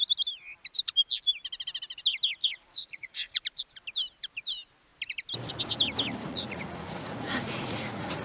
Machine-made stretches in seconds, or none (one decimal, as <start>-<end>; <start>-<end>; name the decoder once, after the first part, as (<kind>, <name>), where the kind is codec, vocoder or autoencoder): 2.4-3.4 (vocoder, Vocos); 6.1-8.2